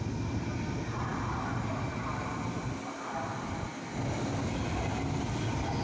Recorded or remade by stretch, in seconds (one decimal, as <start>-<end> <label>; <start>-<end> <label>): 0.0-5.8 recorded